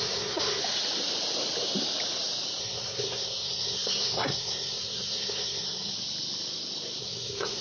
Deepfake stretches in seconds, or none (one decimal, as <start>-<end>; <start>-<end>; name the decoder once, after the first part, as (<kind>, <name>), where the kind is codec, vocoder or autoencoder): 0.0-0.6 (codec, SNAC); 2.6-5.9; 7.0-7.6